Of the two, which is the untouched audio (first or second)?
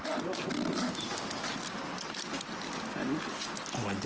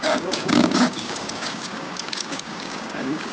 first